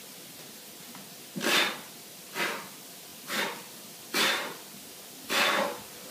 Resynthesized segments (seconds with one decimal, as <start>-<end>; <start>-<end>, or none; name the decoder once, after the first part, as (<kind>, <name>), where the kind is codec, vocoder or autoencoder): none

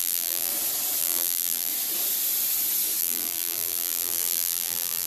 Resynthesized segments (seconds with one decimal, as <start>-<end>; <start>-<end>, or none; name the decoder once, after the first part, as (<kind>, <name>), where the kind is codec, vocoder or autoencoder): 0.0-0.5 (vocoder, BigVGAN v2); 1.0-1.7; 3.0-5.1